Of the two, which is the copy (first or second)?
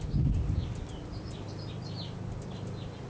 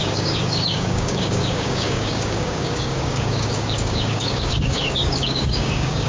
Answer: second